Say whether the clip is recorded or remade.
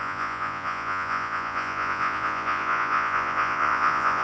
remade